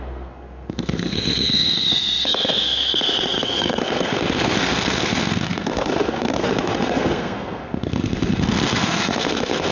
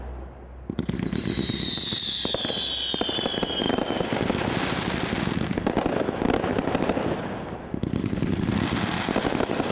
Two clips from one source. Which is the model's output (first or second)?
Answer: first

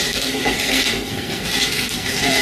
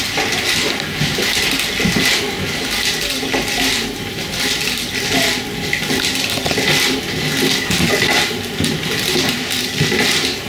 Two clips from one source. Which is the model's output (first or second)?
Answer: first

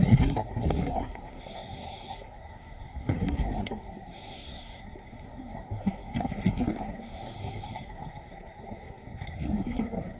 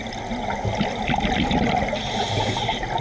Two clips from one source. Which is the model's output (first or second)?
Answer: first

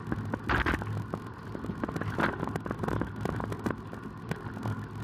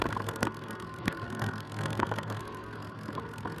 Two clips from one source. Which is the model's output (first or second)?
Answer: second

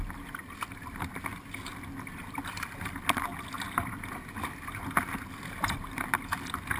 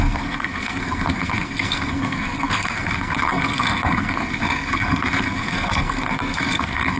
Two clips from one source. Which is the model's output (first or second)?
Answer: second